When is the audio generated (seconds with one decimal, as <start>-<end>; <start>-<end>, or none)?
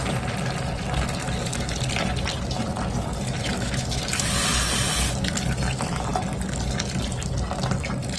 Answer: 3.4-4.0